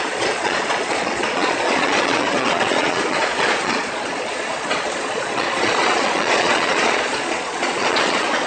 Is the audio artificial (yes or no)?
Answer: yes